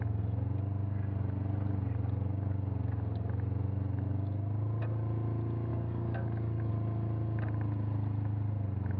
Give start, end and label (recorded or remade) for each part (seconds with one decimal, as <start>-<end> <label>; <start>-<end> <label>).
0.0-5.7 recorded; 5.7-6.7 remade; 6.7-9.0 recorded